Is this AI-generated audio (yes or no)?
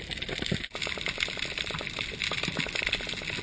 no